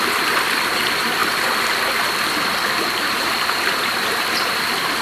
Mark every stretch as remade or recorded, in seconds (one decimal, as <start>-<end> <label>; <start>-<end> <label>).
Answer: 0.0-5.0 recorded